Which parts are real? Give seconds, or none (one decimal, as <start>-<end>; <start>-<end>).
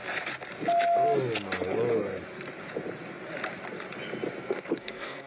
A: 0.0-4.4